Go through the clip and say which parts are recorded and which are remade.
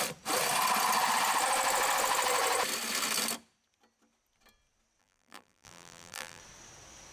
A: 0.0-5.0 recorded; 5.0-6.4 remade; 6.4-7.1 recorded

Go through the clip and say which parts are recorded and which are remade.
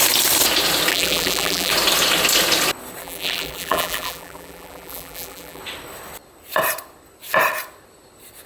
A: 0.0-0.9 recorded; 0.9-1.7 remade; 1.7-3.0 recorded; 3.0-5.6 remade; 5.6-8.5 recorded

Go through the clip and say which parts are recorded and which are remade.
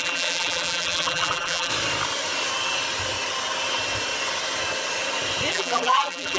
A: 0.0-1.7 remade; 1.7-5.5 recorded; 5.5-6.4 remade